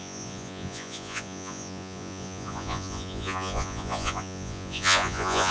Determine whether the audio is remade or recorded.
remade